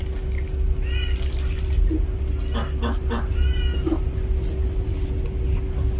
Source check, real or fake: real